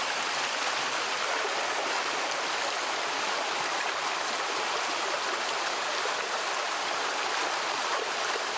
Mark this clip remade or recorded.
recorded